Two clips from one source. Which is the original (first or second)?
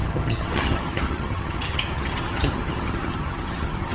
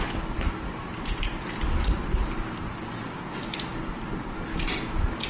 second